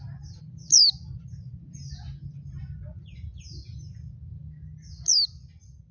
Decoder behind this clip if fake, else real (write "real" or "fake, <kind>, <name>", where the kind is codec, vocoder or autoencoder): real